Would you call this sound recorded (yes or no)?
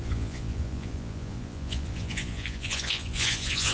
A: no